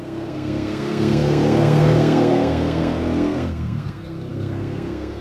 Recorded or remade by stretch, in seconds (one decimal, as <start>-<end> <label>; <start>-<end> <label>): 0.0-5.2 remade